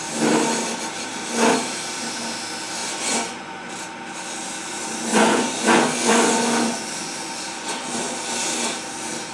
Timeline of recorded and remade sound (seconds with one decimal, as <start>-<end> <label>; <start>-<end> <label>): 0.0-2.8 recorded; 2.8-3.7 remade; 3.7-5.1 recorded; 5.1-8.2 remade; 8.2-9.3 recorded